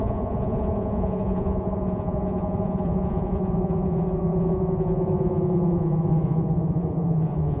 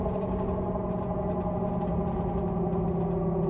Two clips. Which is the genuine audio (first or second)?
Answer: second